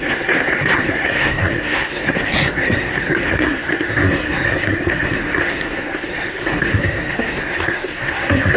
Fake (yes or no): yes